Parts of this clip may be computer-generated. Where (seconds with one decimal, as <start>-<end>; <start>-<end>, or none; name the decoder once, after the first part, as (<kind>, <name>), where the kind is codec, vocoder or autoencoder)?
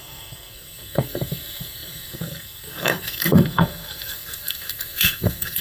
0.0-5.6 (codec, SNAC)